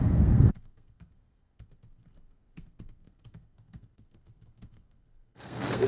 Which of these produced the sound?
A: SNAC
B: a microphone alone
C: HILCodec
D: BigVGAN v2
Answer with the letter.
A